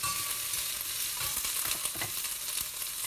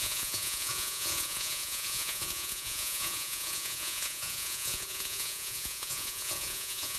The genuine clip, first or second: first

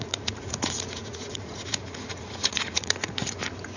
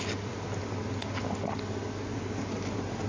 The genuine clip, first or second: second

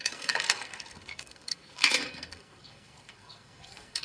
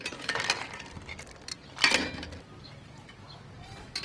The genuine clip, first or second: second